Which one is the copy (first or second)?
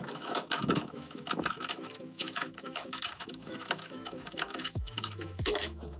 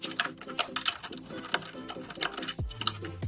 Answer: first